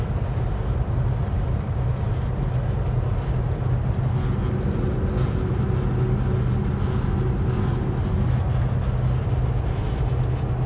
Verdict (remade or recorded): recorded